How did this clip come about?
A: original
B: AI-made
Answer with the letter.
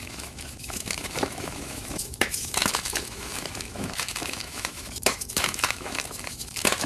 B